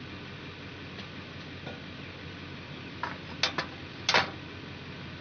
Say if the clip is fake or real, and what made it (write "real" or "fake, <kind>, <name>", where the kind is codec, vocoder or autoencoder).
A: real